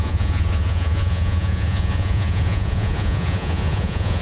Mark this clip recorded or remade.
remade